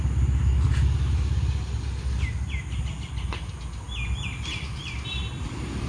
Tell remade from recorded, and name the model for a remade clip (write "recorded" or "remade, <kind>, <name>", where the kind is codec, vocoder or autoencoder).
recorded